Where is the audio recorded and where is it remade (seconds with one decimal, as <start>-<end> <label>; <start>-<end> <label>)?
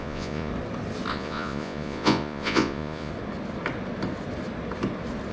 0.0-0.5 remade; 0.5-1.1 recorded; 1.1-3.1 remade; 3.1-5.3 recorded